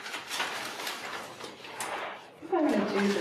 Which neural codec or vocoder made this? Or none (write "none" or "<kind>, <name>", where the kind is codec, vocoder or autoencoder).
none